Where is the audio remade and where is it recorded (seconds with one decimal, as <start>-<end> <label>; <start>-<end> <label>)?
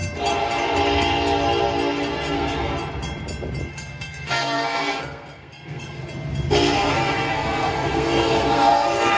0.0-2.1 recorded; 2.1-2.7 remade; 2.7-3.7 recorded; 3.7-6.0 remade; 6.0-6.5 recorded; 6.5-9.2 remade